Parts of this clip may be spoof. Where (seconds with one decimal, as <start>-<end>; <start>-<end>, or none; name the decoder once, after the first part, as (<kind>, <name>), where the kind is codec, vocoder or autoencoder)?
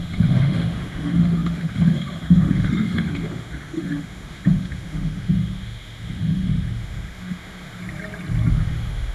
0.0-7.8 (autoencoder, DAC-VAE); 8.5-9.1